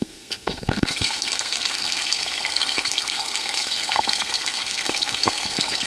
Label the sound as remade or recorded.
remade